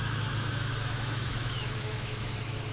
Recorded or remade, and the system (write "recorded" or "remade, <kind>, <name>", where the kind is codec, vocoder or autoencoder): remade, autoencoder, DAC-VAE